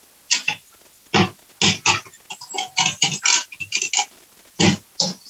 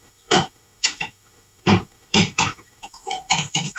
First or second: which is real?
first